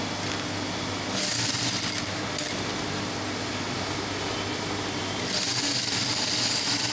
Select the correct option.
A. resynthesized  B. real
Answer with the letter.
B